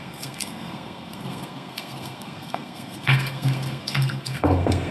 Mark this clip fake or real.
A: fake